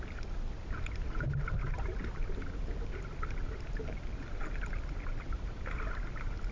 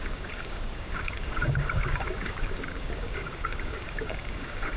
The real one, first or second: first